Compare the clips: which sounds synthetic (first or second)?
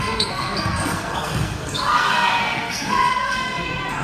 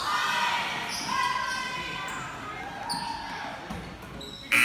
first